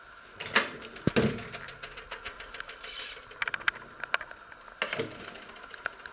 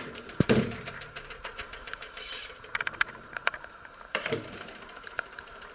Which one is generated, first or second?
second